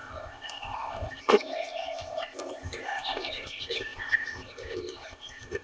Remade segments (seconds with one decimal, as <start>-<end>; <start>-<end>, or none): 0.0-5.6